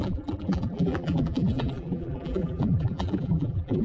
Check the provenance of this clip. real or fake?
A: fake